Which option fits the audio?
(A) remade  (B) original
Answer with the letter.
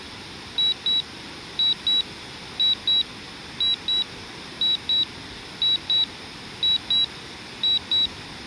B